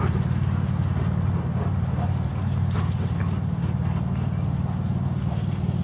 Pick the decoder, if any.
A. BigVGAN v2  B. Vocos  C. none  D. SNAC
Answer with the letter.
C